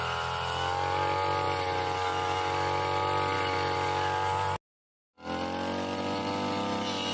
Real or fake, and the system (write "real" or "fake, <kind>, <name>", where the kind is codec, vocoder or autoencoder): real